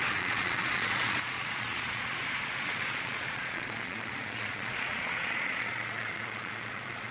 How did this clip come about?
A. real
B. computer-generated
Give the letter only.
B